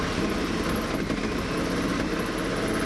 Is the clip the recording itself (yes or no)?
yes